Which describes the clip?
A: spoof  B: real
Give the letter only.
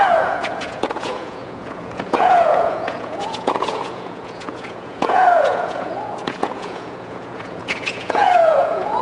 A